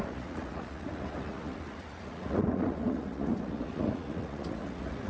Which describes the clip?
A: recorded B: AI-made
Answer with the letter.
B